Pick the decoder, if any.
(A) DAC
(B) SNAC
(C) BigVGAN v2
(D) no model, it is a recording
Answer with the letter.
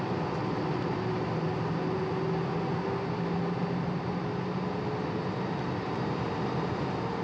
D